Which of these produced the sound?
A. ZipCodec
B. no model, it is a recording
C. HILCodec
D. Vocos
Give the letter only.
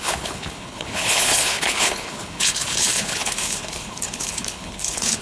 C